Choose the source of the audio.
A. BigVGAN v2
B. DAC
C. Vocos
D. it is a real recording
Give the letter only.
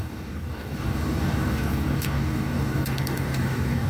B